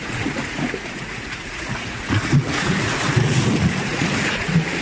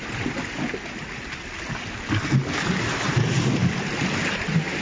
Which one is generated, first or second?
first